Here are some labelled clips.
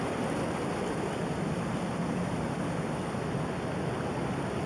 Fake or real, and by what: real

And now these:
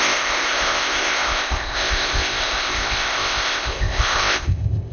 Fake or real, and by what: fake, codec, ZipCodec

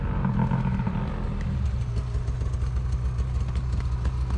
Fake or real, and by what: real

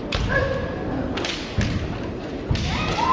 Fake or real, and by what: real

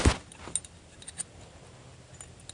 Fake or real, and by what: real